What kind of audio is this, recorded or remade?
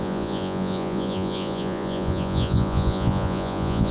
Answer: remade